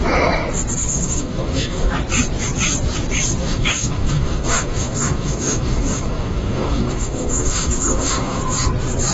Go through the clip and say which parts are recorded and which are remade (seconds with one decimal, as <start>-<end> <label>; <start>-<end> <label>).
0.0-0.9 recorded; 0.9-1.9 remade; 1.9-3.4 recorded; 3.4-8.4 remade; 8.4-9.1 recorded